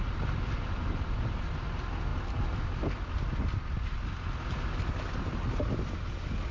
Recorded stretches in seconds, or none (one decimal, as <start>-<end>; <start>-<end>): 0.0-6.5